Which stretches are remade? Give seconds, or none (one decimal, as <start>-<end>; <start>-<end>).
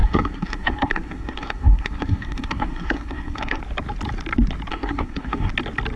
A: 0.0-3.6; 4.7-5.5